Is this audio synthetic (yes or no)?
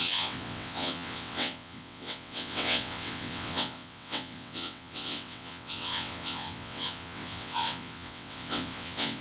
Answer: yes